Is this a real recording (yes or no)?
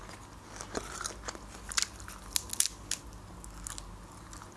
yes